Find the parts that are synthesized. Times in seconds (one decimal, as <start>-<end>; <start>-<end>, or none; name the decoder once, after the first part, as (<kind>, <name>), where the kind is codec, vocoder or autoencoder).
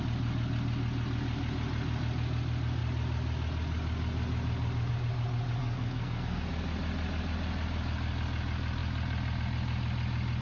5.6-6.4 (codec, SNAC)